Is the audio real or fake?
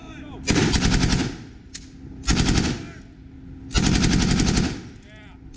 real